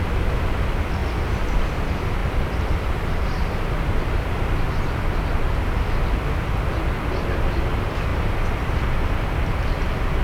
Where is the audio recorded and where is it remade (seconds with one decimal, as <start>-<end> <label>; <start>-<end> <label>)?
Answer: 0.0-1.0 recorded; 1.0-1.8 remade; 1.8-2.2 recorded; 2.2-4.5 remade; 4.5-8.1 recorded; 8.1-8.7 remade; 8.7-10.2 recorded